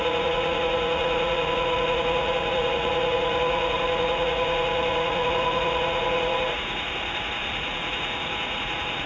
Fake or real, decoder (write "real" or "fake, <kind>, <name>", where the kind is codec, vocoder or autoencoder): fake, vocoder, Vocos